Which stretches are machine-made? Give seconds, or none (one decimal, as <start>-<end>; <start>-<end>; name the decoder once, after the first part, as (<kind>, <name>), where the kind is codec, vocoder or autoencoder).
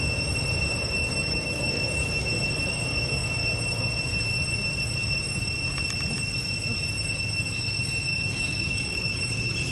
1.0-1.7 (autoencoder, DAC-VAE); 8.1-9.7